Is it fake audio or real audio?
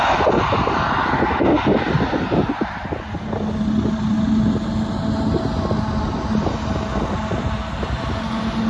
real